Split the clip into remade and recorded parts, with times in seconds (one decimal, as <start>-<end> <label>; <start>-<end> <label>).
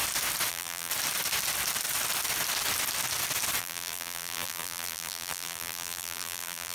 0.0-0.5 recorded; 0.5-0.9 remade; 0.9-3.6 recorded; 3.6-6.7 remade